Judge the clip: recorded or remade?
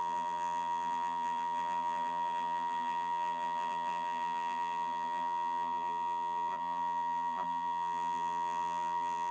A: remade